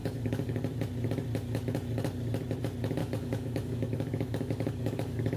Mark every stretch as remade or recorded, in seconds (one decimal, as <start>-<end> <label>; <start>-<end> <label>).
0.0-0.6 remade; 0.6-3.0 recorded; 3.0-5.4 remade